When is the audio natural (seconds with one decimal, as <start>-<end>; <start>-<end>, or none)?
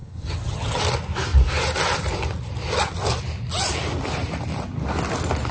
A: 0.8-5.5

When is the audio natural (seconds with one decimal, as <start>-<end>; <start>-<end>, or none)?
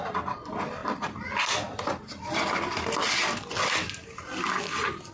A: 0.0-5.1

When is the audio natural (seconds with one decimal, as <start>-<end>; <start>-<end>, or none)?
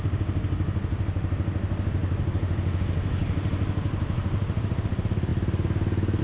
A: 0.0-6.2